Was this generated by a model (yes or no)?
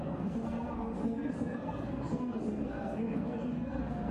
yes